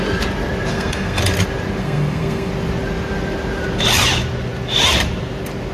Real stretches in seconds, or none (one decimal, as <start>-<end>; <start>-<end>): 0.0-0.7; 1.2-1.8; 2.5-5.7